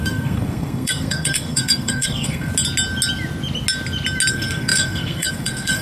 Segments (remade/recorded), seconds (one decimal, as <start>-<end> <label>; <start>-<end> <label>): 0.0-2.5 remade; 2.5-4.3 recorded; 4.3-5.8 remade